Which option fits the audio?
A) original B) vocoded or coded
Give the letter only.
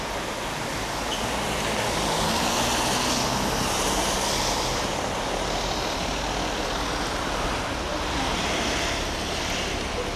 A